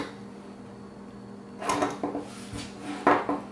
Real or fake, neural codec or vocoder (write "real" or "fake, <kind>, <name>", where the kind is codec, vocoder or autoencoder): real